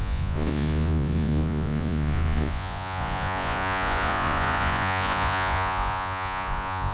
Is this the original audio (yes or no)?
no